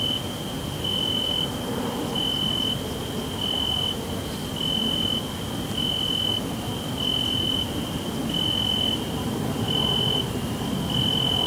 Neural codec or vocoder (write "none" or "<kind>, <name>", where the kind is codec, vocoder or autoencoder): none